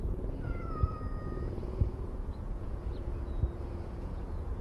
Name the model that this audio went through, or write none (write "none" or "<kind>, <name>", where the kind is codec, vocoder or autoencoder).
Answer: vocoder, Vocos